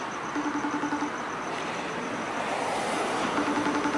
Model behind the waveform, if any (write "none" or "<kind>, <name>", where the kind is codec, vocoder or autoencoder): none